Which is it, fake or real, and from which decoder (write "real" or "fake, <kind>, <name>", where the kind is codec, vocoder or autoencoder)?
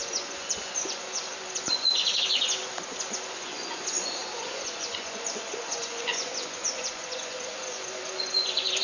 fake, vocoder, Vocos